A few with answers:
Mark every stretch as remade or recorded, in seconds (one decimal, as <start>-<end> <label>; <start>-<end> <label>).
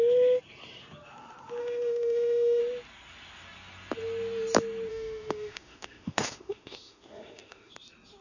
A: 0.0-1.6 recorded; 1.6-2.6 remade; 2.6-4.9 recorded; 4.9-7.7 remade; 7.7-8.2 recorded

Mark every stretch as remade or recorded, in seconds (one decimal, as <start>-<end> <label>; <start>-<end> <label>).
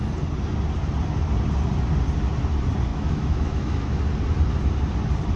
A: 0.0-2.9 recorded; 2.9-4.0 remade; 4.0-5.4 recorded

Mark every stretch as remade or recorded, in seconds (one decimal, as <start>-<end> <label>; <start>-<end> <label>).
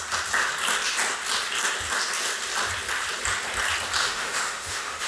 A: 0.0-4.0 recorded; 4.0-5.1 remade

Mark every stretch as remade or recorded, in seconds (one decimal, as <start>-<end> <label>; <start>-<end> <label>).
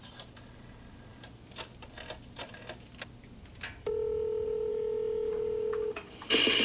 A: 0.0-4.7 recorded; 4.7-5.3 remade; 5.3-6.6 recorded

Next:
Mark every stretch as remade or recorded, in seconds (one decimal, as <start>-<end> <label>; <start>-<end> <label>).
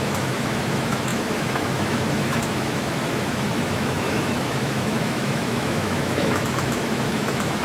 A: 0.0-7.6 remade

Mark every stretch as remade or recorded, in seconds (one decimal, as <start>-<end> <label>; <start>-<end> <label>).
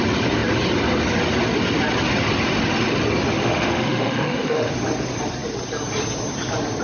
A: 0.0-3.4 recorded; 3.4-4.7 remade; 4.7-6.8 recorded